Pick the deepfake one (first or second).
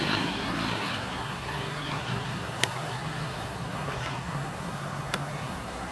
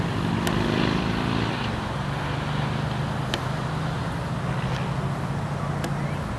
first